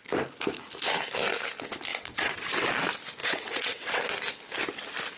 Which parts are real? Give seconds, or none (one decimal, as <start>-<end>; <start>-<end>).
0.0-1.9; 2.5-3.2; 4.0-5.2